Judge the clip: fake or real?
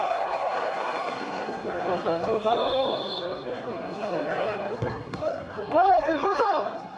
fake